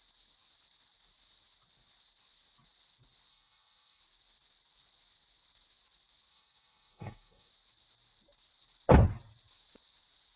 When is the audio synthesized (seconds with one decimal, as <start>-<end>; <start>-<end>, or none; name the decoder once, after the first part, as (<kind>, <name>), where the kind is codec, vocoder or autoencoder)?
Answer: 3.3-4.0 (codec, SNAC); 6.3-7.5